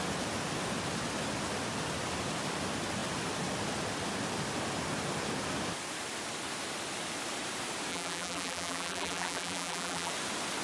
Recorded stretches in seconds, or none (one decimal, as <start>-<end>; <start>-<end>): 0.0-7.9; 10.1-10.6